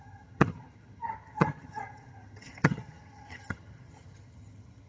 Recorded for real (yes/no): no